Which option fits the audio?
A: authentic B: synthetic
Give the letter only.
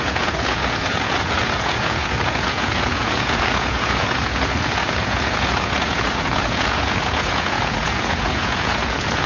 B